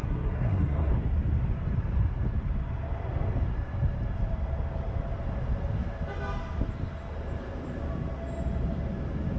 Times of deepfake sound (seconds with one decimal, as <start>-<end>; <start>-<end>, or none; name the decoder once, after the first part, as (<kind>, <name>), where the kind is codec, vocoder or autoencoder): 0.0-0.9 (codec, SNAC)